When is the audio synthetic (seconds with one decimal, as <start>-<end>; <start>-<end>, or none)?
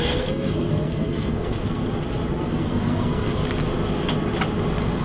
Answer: 0.0-1.8; 2.4-3.4